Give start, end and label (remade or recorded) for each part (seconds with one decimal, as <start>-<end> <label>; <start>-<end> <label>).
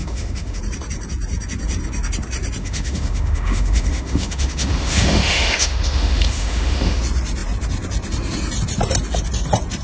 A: 0.0-0.6 remade; 0.6-2.6 recorded; 2.6-7.0 remade; 7.0-9.8 recorded